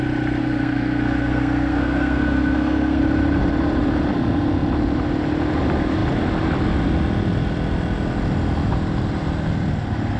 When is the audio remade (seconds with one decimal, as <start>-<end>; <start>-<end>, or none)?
0.4-3.0